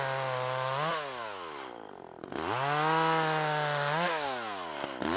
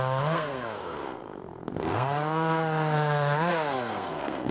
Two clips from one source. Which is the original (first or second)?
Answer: first